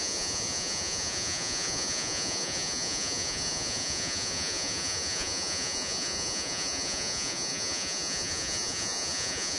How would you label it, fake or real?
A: fake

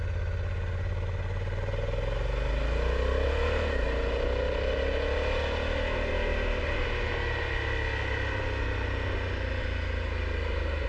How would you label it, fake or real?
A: real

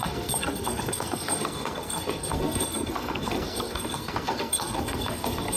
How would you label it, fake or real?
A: fake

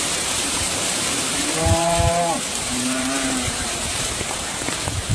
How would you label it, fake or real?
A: fake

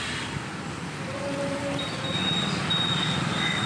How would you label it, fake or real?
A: real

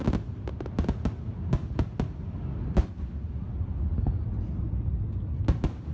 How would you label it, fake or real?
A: real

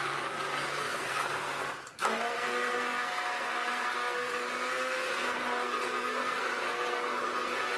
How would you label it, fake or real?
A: fake